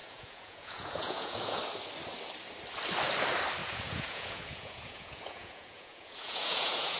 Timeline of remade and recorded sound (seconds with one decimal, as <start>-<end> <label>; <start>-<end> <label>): 0.0-1.6 remade; 1.6-3.6 recorded; 3.6-7.0 remade